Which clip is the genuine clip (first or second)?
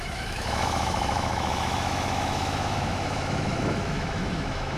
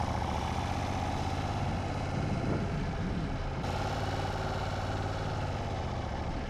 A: second